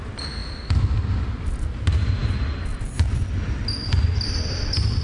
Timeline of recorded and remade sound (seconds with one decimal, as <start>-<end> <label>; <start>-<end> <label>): 0.0-5.0 recorded